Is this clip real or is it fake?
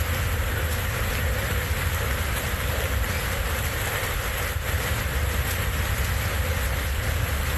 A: real